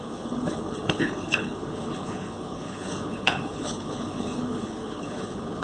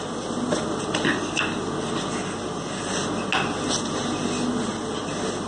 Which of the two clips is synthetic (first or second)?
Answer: first